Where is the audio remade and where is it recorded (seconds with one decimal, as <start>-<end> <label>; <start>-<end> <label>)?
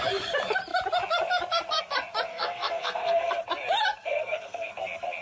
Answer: 0.0-2.3 recorded; 2.3-3.4 remade; 3.4-4.0 recorded; 4.0-4.7 remade; 4.7-5.2 recorded